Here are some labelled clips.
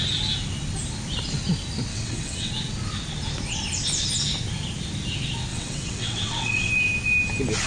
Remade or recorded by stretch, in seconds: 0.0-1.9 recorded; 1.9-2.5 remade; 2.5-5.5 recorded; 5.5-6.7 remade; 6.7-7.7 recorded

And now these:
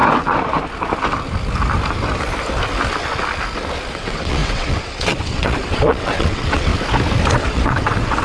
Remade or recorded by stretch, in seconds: 0.0-3.9 recorded; 3.9-6.7 remade; 6.7-7.3 recorded; 7.3-8.2 remade